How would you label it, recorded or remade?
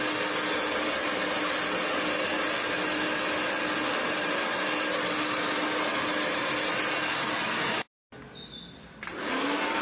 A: recorded